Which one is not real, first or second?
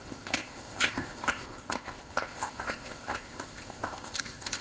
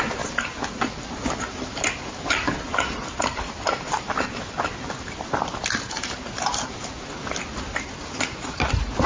first